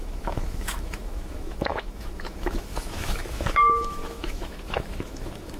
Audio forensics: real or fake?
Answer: fake